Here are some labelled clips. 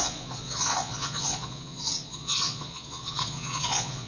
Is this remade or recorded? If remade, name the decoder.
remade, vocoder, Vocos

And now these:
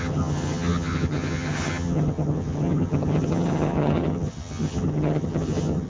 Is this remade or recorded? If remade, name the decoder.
remade, vocoder, HiFi-GAN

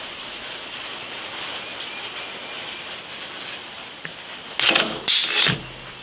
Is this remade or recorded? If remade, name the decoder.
recorded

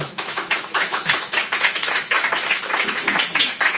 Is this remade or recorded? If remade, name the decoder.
remade, autoencoder, DAC-VAE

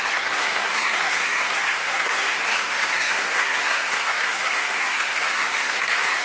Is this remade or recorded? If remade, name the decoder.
remade, codec, SNAC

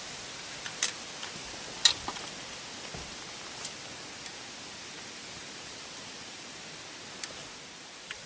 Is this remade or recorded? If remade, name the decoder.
recorded